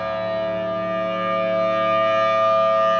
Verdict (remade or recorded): recorded